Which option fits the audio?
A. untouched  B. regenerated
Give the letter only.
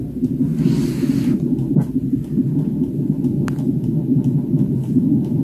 A